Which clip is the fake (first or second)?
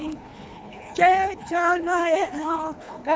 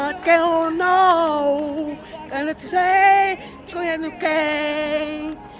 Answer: first